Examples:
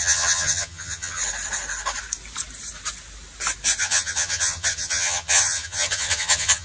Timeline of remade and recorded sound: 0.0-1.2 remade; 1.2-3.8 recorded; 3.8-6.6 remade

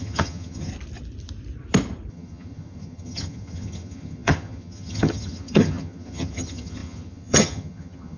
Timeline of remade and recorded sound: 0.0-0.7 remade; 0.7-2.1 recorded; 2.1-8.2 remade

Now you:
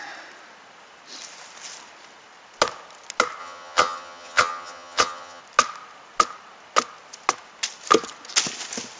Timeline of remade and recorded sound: 0.0-3.4 recorded; 3.4-5.4 remade; 5.4-9.0 recorded

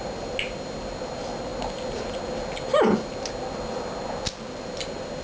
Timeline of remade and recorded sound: 0.0-5.2 recorded

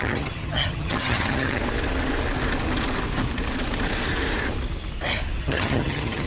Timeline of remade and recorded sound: 0.0-1.6 remade; 1.6-5.4 recorded; 5.4-6.3 remade

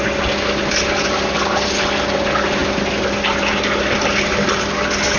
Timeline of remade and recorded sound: 0.0-5.2 recorded